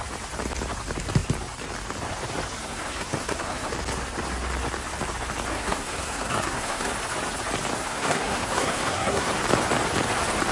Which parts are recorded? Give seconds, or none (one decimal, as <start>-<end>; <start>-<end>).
0.0-2.6; 3.7-5.5; 6.9-7.8; 9.3-10.5